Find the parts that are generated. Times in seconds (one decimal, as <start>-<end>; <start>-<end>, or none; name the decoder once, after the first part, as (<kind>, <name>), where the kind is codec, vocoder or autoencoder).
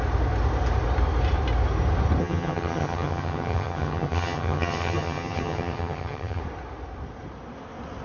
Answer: 2.2-6.4 (vocoder, HiFi-GAN)